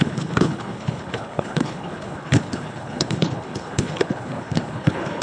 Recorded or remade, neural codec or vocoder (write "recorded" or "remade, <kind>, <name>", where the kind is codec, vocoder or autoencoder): remade, codec, HILCodec